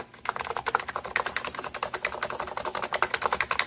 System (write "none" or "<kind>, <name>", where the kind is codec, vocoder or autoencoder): none